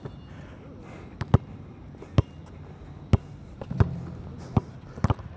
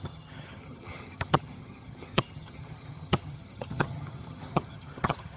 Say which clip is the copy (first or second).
second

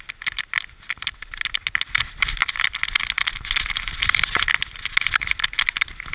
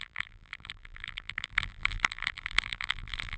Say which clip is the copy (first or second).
second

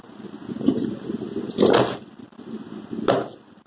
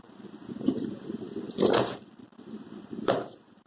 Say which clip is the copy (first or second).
second